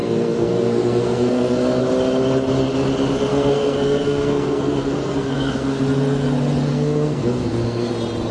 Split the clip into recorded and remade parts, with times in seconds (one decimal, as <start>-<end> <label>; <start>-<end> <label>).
0.0-1.8 remade; 1.8-3.3 recorded; 3.3-5.8 remade; 5.8-6.7 recorded; 6.7-7.9 remade; 7.9-8.3 recorded